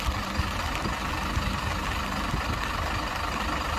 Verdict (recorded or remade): recorded